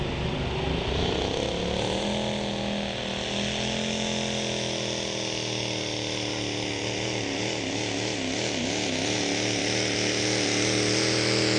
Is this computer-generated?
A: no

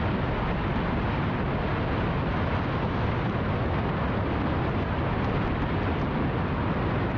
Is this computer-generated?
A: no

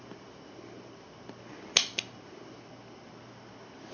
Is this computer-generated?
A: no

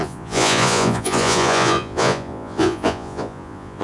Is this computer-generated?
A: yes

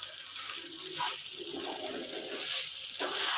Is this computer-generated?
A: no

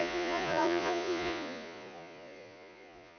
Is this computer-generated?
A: yes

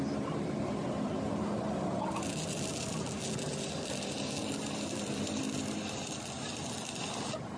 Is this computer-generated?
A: no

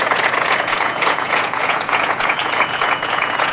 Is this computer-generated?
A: yes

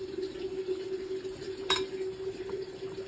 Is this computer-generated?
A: no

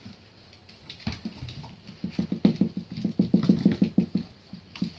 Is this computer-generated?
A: no